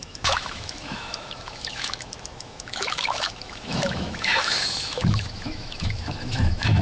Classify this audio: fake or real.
fake